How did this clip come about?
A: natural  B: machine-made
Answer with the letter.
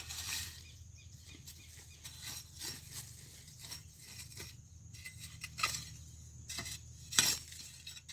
A